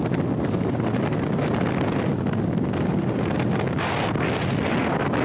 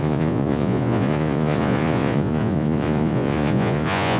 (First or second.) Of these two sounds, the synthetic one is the second